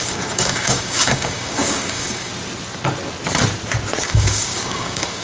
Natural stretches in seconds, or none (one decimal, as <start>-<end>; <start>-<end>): 2.3-4.0